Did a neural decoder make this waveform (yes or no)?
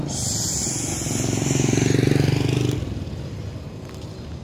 no